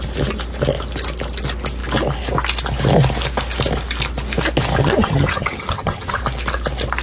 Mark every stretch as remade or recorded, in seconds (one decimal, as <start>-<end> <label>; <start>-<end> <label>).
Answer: 0.0-4.8 recorded; 4.8-6.2 remade; 6.2-7.0 recorded